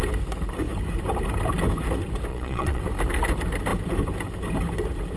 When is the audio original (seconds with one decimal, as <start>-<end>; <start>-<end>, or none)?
0.0-2.3; 2.8-5.2